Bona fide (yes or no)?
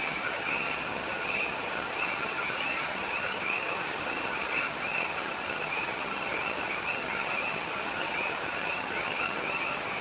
no